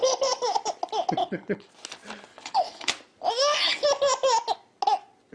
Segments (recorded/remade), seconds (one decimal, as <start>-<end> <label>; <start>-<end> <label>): 0.0-1.2 recorded; 1.2-1.7 remade; 1.7-2.3 recorded; 2.3-2.9 remade; 2.9-5.3 recorded